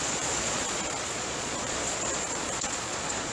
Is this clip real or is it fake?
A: fake